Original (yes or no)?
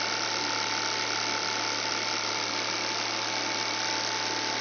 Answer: yes